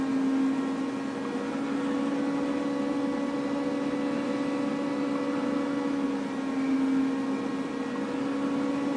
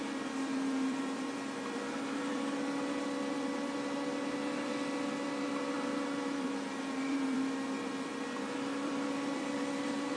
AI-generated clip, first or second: second